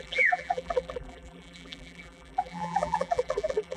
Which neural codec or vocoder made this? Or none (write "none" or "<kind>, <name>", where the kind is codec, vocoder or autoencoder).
vocoder, BigVGAN v2